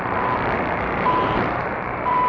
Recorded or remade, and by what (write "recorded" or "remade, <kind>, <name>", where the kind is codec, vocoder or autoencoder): remade, vocoder, BigVGAN v2